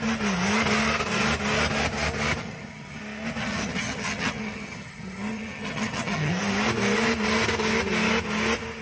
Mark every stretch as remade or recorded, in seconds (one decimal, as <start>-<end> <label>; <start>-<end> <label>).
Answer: 0.0-2.4 recorded; 2.4-3.0 remade; 3.0-3.4 recorded; 3.4-6.3 remade; 6.3-8.8 recorded

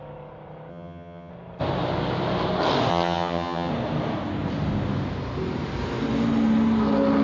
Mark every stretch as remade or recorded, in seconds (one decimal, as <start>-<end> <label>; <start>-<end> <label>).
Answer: 0.0-0.7 recorded; 0.7-1.3 remade; 1.3-2.9 recorded; 2.9-3.7 remade; 3.7-7.2 recorded

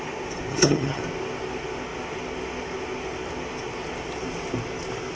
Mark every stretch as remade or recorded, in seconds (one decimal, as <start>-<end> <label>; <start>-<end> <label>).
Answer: 0.0-0.5 recorded; 0.5-1.0 remade; 1.0-5.2 recorded

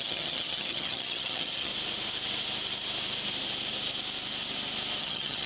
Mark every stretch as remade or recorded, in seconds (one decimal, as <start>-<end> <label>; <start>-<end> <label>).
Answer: 0.0-1.7 remade; 1.7-5.0 recorded; 5.0-5.5 remade

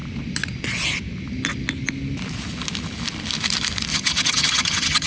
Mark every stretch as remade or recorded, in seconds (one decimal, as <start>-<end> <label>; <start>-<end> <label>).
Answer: 0.0-3.9 recorded; 3.9-5.1 remade

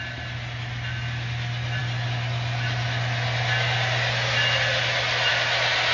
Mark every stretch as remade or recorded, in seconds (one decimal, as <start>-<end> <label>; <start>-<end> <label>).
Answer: 0.0-5.9 recorded